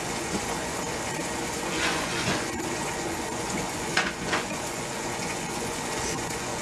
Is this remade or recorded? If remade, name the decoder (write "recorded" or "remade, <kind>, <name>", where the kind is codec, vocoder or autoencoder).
remade, vocoder, Vocos